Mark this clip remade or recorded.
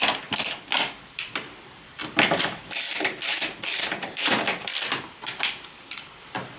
remade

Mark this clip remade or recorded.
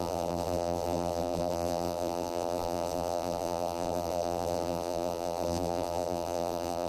remade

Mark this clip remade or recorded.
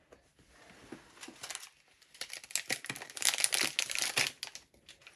recorded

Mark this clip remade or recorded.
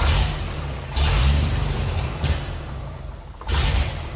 remade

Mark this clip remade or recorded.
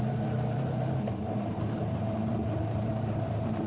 remade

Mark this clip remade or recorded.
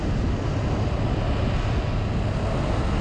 recorded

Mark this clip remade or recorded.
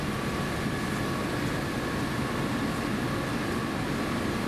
recorded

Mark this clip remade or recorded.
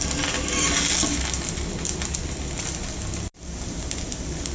remade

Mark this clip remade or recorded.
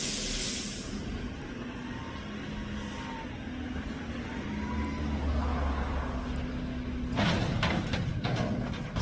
recorded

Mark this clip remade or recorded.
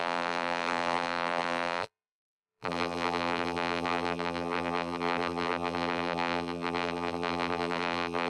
remade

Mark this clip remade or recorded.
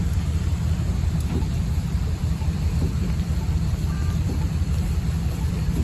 remade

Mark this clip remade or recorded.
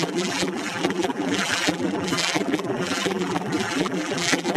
remade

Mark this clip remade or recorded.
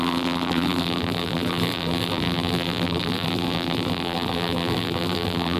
remade